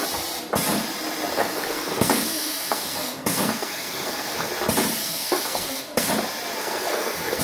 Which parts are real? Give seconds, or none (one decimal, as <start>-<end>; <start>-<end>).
0.0-1.4; 4.5-5.0; 6.1-6.6